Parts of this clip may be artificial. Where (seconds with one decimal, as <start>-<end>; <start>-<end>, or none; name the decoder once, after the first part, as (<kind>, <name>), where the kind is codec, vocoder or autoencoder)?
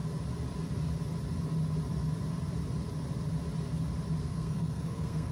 4.2-5.3 (codec, SNAC)